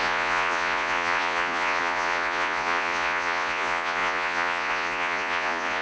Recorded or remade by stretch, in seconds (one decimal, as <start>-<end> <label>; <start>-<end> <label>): 0.0-5.8 remade

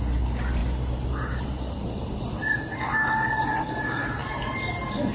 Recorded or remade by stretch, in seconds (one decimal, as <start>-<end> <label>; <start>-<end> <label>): 0.0-5.1 recorded

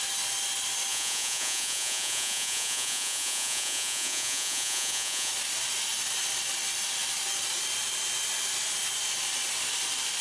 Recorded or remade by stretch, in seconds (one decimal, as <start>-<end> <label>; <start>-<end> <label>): 0.0-0.9 recorded; 0.9-5.3 remade; 5.3-10.2 recorded

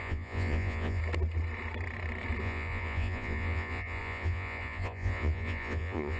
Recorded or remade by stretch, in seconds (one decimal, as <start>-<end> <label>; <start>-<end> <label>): 0.0-1.0 remade; 1.0-2.4 recorded; 2.4-6.2 remade

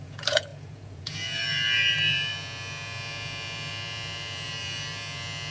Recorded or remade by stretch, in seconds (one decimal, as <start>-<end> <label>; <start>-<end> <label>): 0.0-5.5 remade

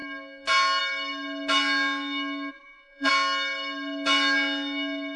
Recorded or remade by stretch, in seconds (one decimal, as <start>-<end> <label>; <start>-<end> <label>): 0.0-2.5 recorded; 2.5-3.1 remade; 3.1-5.2 recorded

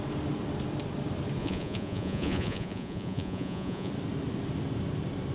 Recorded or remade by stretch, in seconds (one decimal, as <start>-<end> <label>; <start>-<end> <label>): 0.0-1.4 recorded; 1.4-3.9 remade; 3.9-5.3 recorded

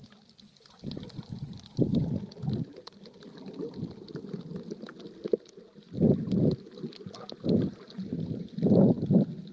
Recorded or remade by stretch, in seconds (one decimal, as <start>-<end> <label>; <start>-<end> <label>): 0.0-9.5 recorded